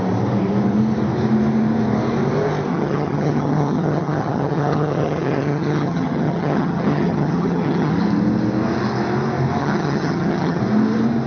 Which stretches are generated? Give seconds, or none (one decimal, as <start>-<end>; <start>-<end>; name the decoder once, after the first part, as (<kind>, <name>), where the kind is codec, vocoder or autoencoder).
2.7-7.9 (vocoder, HiFi-GAN); 9.6-10.6